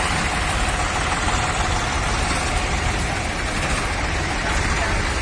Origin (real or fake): real